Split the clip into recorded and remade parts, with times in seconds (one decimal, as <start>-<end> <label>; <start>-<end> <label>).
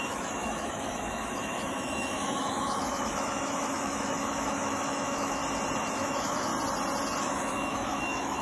0.0-5.4 remade; 5.4-5.9 recorded; 5.9-6.5 remade; 6.5-7.2 recorded; 7.2-8.4 remade